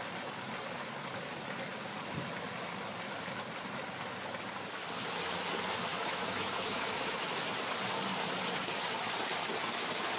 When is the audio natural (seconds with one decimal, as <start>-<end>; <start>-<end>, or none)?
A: 0.0-5.9; 7.2-10.2